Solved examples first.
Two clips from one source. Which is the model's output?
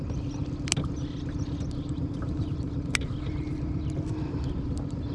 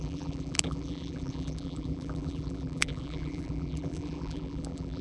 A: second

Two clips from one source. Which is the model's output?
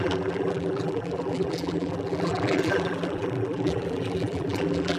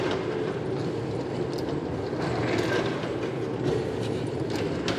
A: first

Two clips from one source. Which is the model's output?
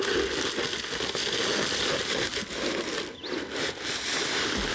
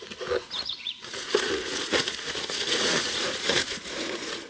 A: second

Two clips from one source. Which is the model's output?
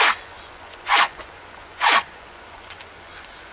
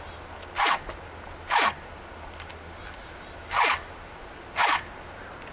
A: first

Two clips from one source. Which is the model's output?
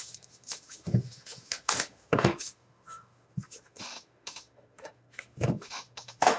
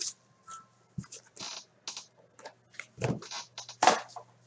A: first